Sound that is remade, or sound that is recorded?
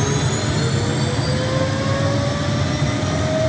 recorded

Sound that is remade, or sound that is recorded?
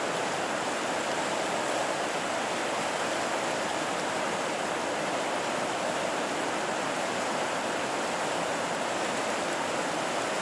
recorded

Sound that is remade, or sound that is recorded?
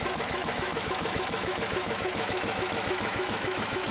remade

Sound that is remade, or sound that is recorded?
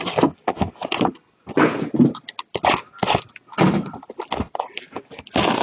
recorded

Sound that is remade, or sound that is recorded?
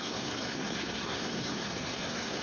remade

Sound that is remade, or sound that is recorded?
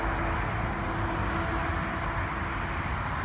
recorded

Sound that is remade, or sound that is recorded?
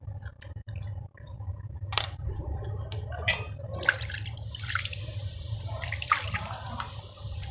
remade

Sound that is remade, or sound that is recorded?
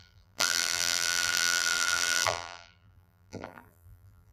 remade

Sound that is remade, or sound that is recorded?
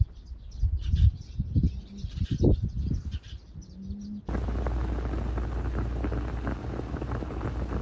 recorded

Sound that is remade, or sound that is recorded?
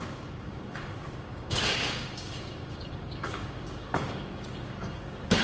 remade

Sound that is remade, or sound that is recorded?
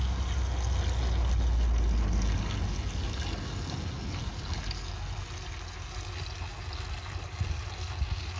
recorded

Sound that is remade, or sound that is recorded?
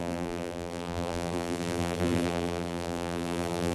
remade